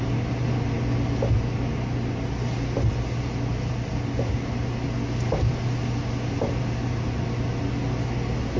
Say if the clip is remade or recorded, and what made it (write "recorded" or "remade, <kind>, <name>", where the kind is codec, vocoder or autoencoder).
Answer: recorded